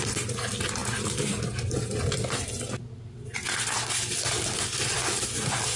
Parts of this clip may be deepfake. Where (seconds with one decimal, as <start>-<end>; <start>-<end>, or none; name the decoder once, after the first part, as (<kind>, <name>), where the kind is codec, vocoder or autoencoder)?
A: 0.0-0.8 (vocoder, BigVGAN v2); 2.9-5.8